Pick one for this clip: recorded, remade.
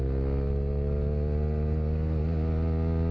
recorded